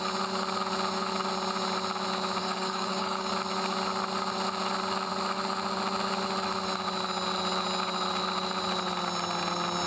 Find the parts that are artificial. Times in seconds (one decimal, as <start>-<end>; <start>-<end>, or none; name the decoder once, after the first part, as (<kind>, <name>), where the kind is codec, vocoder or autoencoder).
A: 2.4-3.3 (codec, DAC)